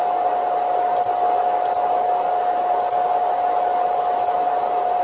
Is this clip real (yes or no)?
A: yes